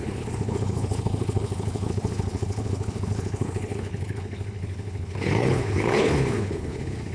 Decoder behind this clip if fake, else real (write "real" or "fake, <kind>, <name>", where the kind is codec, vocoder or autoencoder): fake, codec, HILCodec